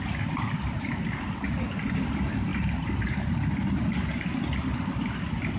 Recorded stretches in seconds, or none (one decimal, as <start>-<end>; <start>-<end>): 0.0-2.5; 3.3-5.6